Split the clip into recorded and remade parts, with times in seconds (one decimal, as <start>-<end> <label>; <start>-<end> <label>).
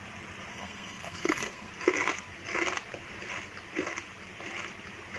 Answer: 0.0-0.5 recorded; 0.5-1.7 remade; 1.7-5.2 recorded